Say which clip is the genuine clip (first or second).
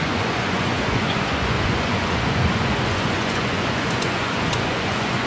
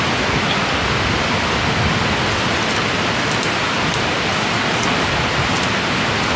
second